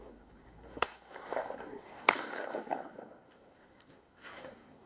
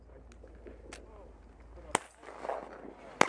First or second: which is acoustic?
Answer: second